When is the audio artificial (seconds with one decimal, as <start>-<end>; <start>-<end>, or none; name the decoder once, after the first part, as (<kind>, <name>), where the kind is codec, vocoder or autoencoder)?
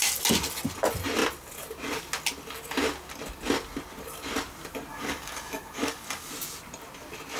4.9-6.3 (codec, DAC)